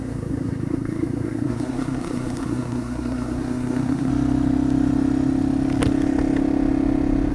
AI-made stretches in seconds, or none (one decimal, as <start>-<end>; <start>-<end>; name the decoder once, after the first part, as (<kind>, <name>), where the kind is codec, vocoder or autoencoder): 0.0-4.1 (codec, SNAC)